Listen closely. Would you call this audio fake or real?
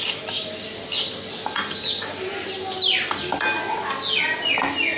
real